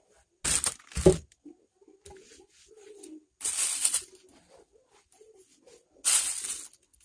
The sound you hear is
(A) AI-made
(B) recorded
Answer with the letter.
B